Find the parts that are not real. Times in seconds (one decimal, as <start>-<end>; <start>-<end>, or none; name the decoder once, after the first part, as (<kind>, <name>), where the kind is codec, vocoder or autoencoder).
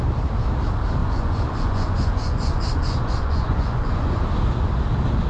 1.0-4.2 (vocoder, Vocos)